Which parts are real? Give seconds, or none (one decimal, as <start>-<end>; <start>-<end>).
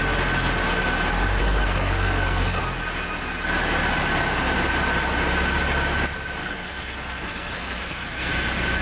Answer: 0.0-1.4; 2.6-6.4; 8.3-8.8